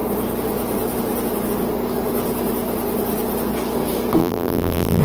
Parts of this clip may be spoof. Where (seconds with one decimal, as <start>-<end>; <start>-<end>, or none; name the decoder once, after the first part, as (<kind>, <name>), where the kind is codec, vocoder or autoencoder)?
4.2-5.0 (vocoder, BigVGAN v2)